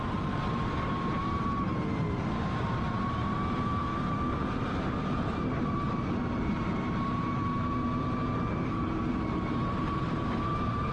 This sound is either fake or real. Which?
fake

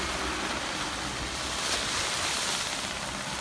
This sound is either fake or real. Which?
real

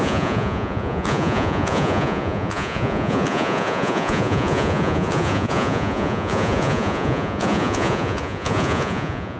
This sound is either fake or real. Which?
fake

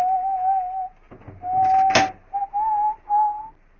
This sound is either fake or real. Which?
real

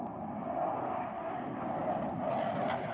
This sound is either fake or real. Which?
real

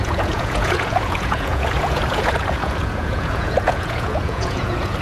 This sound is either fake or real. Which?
fake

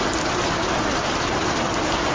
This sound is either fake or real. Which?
real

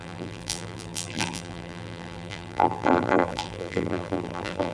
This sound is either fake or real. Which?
fake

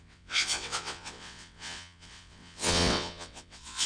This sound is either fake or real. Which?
fake